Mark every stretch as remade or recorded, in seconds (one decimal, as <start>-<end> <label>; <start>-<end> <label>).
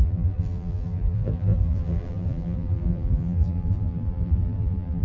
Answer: 0.0-5.0 remade